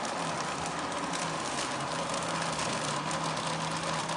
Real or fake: real